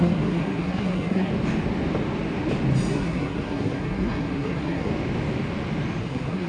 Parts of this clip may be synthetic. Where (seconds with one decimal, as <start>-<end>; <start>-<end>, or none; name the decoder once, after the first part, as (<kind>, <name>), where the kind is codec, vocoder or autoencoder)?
0.0-1.3 (codec, SNAC); 2.9-4.9; 6.0-6.5